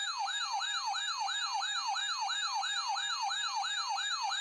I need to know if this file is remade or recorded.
recorded